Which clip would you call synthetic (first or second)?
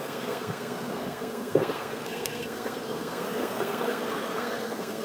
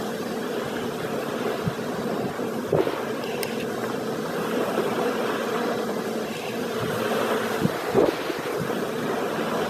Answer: first